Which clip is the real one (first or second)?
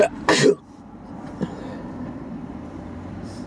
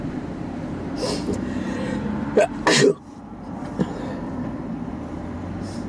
second